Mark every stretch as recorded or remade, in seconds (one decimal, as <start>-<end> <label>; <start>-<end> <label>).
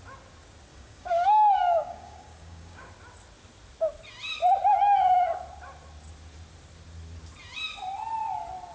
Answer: 0.0-0.7 recorded; 0.7-2.9 remade; 2.9-8.7 recorded